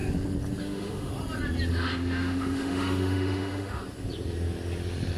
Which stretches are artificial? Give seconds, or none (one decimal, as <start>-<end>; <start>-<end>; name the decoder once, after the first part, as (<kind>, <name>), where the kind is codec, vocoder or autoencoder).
0.6-1.1 (autoencoder, DAC-VAE); 1.7-3.8